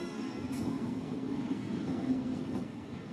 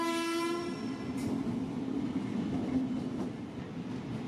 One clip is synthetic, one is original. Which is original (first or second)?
second